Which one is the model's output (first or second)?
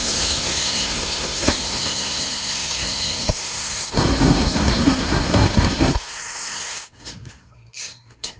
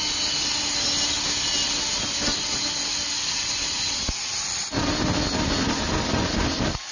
first